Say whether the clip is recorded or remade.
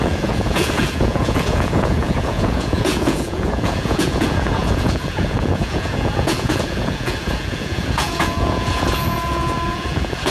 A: remade